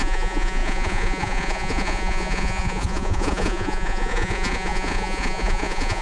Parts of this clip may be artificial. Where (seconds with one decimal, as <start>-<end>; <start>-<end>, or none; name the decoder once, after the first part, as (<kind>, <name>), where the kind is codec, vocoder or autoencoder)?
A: 0.0-6.0 (vocoder, Vocos)